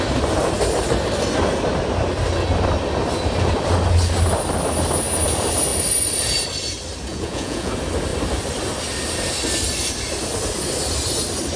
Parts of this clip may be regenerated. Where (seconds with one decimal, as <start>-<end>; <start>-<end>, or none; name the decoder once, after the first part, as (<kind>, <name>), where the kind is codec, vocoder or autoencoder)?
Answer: 7.1-7.7 (vocoder, Vocos)